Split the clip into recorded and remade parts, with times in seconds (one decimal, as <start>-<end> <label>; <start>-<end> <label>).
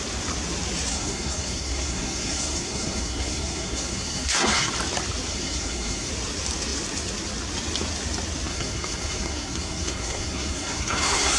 0.0-0.9 recorded; 0.9-4.7 remade; 4.7-5.3 recorded; 5.3-6.1 remade; 6.1-8.5 recorded; 8.5-11.4 remade